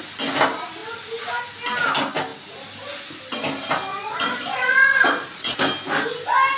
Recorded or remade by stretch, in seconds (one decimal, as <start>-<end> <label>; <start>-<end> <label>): 0.0-3.9 recorded; 3.9-5.6 remade; 5.6-6.6 recorded